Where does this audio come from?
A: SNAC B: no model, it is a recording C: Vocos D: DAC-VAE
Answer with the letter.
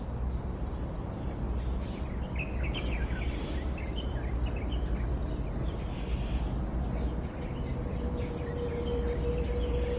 B